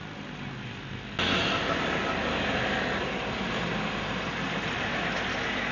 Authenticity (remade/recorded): recorded